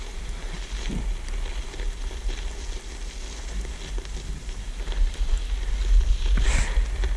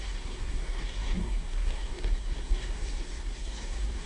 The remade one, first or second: second